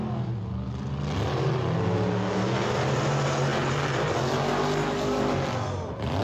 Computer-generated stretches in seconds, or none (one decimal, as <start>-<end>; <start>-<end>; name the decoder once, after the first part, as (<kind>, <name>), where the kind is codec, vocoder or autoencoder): none